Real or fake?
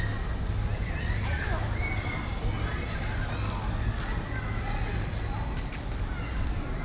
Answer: real